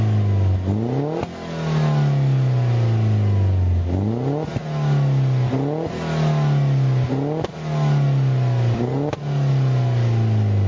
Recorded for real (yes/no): yes